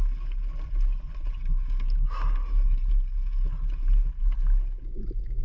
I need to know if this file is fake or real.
real